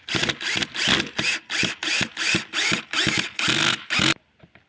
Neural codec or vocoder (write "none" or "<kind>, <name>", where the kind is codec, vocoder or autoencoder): none